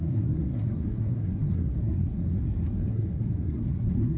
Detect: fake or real fake